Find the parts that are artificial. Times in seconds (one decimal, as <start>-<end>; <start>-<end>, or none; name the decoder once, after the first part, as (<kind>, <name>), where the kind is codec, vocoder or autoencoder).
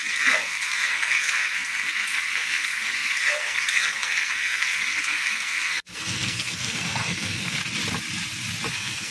0.0-7.6 (codec, SNAC); 8.7-9.1